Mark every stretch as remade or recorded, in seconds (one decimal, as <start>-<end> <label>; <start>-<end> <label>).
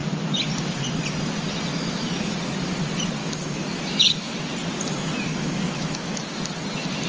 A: 0.0-1.7 recorded; 1.7-2.3 remade; 2.3-3.2 recorded; 3.2-4.3 remade; 4.3-5.3 recorded; 5.3-6.2 remade; 6.2-7.1 recorded